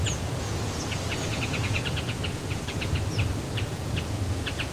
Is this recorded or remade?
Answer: remade